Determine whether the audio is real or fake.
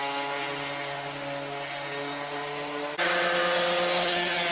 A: real